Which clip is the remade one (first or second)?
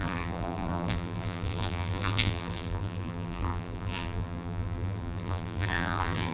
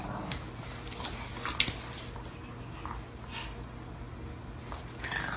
first